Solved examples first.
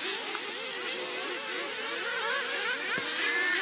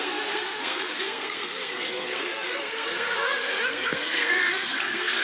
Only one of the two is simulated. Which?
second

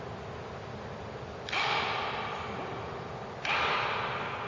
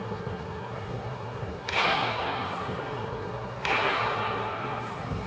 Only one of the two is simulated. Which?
second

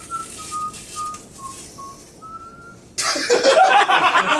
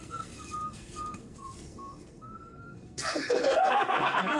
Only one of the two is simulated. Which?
second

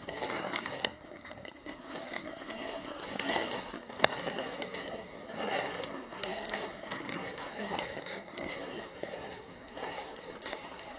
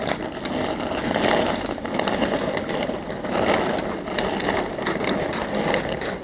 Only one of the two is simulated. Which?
first